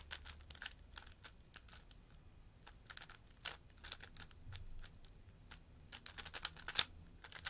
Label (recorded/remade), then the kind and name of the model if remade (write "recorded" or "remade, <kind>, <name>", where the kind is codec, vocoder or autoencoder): recorded